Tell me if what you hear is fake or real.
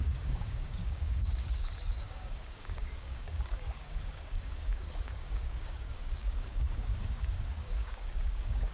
fake